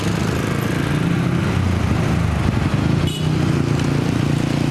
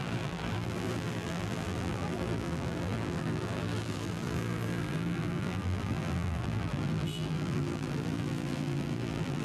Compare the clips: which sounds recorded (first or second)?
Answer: first